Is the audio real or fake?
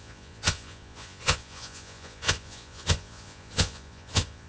fake